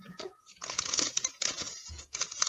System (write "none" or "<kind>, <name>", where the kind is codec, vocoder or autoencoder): vocoder, Vocos